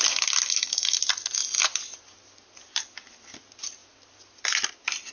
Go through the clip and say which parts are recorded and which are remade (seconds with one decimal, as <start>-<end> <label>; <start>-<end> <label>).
0.0-5.1 recorded